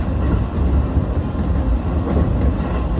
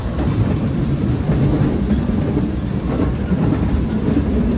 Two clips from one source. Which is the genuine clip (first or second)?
first